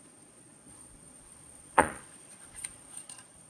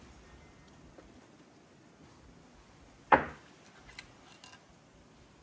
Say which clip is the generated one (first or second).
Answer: first